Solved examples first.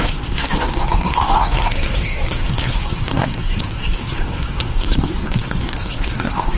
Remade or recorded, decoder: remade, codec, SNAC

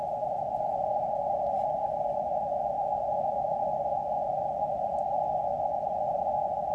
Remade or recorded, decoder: recorded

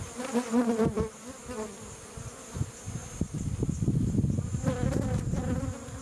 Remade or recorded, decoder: recorded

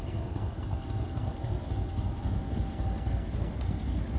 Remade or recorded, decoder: remade, codec, SNAC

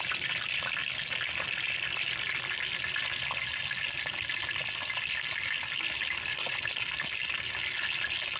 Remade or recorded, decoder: recorded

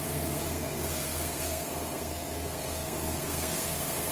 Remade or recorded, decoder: remade, codec, SNAC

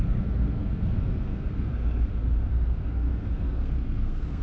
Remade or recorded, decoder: remade, codec, SNAC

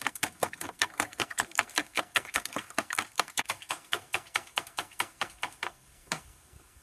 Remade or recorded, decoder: remade, codec, SNAC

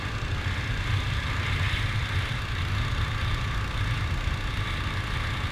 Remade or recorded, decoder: recorded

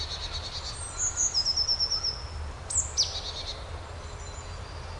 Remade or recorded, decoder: recorded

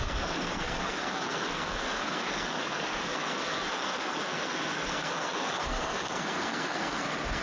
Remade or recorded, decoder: remade, codec, SNAC